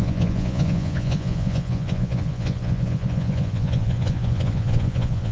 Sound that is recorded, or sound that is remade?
remade